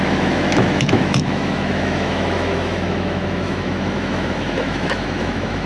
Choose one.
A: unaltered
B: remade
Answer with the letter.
B